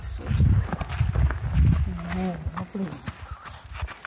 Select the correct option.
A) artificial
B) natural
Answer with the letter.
B